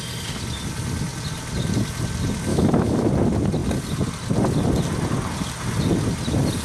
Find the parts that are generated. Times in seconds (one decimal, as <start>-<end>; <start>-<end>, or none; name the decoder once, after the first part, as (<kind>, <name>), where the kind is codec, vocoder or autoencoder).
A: 2.5-3.1 (autoencoder, DAC-VAE)